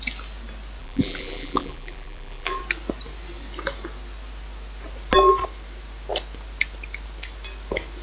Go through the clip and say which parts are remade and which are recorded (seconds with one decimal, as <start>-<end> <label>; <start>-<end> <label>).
0.0-0.8 recorded; 0.8-2.6 remade; 2.6-8.0 recorded